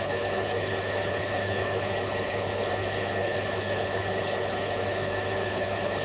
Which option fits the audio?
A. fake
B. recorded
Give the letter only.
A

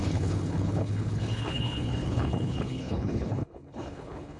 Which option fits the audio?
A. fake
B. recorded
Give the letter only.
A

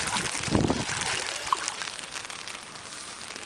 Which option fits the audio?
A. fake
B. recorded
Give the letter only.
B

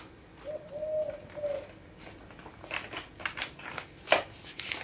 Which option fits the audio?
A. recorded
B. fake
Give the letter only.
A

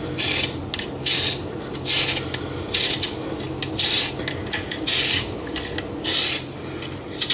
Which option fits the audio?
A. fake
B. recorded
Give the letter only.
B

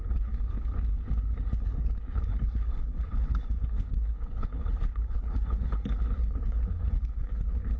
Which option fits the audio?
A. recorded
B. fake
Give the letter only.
B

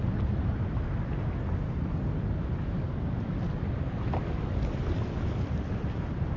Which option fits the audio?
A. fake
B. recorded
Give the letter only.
B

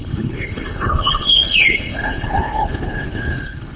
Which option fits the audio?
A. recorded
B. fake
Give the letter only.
B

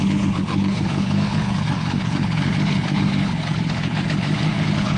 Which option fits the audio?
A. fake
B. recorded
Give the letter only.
A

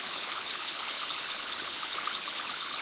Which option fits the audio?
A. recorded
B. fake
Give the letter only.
B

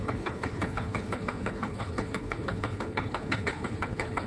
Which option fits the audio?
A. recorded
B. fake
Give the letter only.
B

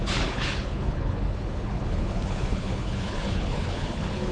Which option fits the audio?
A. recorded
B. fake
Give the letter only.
B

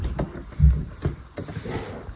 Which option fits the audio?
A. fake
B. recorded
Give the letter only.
B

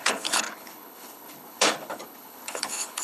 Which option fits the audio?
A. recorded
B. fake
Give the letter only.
B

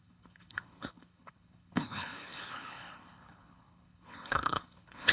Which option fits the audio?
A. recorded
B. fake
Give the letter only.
B